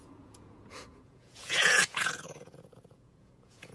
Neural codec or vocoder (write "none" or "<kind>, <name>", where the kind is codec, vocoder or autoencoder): vocoder, Vocos